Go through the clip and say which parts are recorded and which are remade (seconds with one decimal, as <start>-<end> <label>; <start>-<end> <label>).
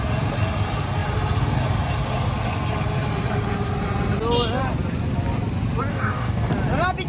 0.0-5.9 recorded; 5.9-6.5 remade; 6.5-7.1 recorded